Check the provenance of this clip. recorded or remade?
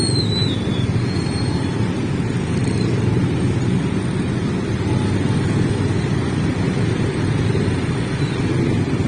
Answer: recorded